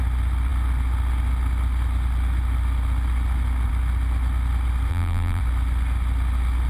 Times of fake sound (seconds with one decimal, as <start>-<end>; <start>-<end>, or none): 4.9-5.4